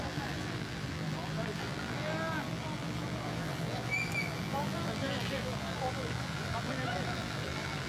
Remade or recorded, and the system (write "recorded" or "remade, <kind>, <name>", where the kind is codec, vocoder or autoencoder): remade, vocoder, BigVGAN v2